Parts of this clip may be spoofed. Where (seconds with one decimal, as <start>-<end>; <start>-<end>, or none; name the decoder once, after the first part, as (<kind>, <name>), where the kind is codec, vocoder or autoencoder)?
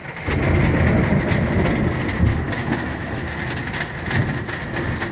2.3-3.2 (autoencoder, DAC-VAE)